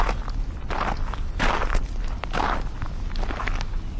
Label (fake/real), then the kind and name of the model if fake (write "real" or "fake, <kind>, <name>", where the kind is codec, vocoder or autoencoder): real